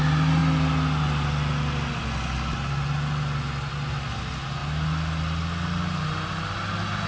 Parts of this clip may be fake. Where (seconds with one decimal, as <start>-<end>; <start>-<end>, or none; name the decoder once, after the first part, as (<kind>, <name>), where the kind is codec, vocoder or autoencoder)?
none